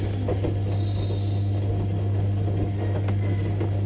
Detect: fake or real real